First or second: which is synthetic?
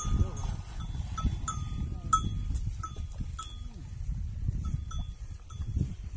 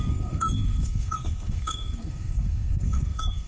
second